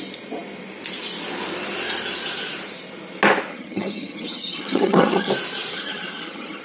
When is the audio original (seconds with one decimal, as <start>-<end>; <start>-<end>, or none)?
0.0-3.5; 5.3-5.7